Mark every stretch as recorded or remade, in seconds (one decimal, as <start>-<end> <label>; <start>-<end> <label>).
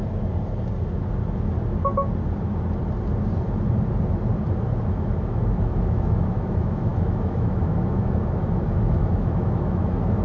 0.0-4.9 recorded; 4.9-10.2 remade